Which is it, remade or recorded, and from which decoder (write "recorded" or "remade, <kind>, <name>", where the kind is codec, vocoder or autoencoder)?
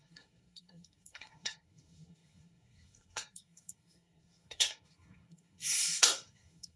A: remade, codec, SNAC